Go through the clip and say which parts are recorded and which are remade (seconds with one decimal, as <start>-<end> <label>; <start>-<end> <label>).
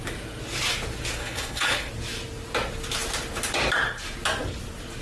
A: 0.0-1.2 recorded; 1.2-1.9 remade; 1.9-5.0 recorded